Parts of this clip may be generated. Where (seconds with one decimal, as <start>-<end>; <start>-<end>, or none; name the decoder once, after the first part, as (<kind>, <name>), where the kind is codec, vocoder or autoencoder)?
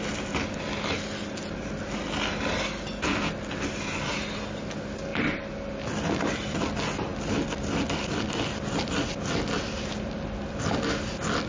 5.1-5.8 (vocoder, BigVGAN v2)